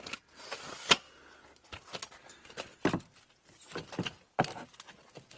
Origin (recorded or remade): recorded